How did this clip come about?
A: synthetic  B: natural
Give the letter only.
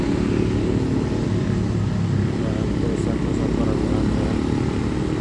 B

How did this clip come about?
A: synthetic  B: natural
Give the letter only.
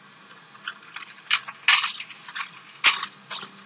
B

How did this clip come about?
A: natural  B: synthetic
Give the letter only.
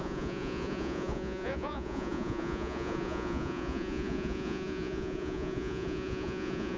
B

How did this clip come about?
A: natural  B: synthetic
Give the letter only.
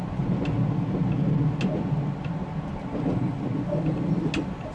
A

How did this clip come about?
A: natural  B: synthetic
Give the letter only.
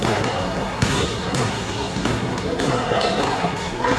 B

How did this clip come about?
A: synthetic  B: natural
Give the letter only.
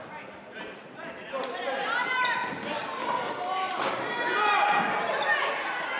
B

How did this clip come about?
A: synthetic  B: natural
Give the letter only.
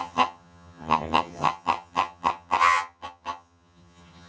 A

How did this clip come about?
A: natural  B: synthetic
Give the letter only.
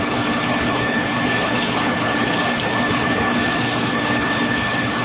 B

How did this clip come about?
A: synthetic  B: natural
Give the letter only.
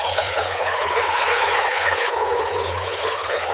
A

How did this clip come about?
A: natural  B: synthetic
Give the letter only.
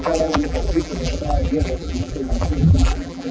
B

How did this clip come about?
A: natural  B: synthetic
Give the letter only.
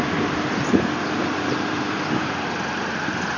B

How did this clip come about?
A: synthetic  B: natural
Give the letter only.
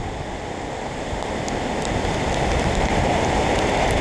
B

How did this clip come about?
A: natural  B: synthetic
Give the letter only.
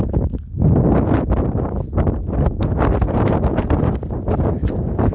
A